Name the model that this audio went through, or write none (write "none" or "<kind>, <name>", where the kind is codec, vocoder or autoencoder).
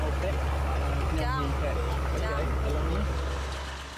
none